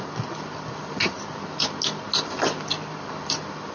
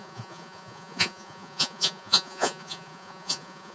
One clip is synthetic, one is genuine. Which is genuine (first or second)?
first